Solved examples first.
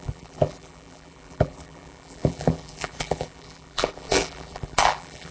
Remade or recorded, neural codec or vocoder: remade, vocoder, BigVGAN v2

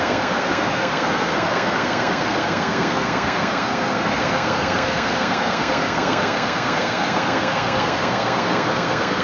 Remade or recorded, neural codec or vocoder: remade, codec, SNAC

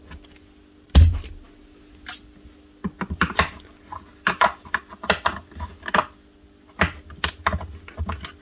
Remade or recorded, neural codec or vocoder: recorded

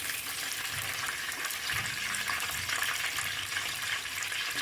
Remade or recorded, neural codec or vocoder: recorded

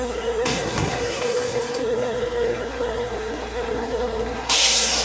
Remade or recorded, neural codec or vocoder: remade, codec, SNAC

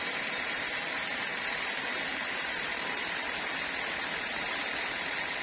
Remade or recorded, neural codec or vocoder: remade, vocoder, BigVGAN v2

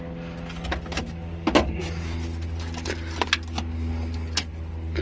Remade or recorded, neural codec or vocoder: recorded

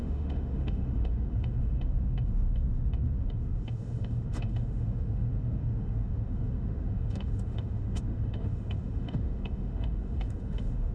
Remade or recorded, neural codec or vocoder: remade, autoencoder, DAC-VAE